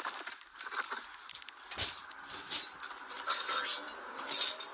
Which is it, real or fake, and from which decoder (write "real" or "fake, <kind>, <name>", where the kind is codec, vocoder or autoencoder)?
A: real